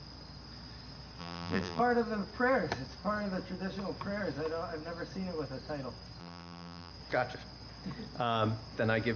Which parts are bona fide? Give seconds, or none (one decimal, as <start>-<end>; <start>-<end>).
0.0-1.2; 1.8-6.2; 6.9-9.2